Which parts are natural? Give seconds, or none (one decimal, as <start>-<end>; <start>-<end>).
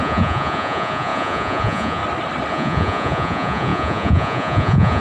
2.0-2.5